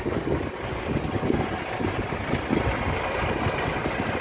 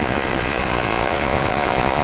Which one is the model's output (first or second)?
second